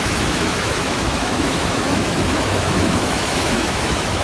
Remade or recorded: remade